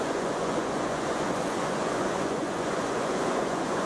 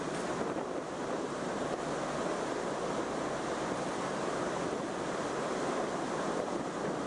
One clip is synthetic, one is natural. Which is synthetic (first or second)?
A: first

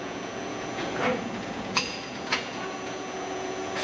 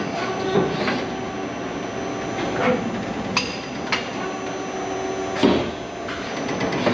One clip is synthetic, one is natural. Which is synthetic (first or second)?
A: first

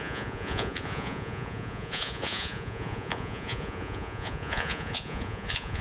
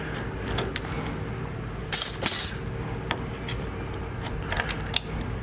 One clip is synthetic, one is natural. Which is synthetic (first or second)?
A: first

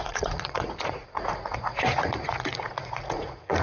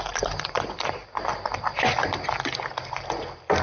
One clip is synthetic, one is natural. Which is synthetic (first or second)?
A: first